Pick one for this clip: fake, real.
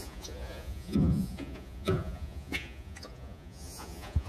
fake